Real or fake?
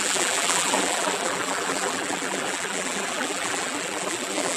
fake